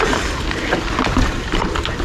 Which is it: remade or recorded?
recorded